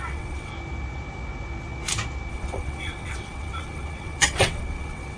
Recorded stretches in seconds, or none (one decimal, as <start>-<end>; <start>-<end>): 0.5-2.3